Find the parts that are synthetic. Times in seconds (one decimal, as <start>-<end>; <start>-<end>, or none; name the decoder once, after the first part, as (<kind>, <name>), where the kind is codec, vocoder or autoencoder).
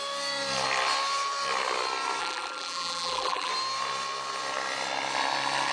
2.2-3.5 (vocoder, BigVGAN v2)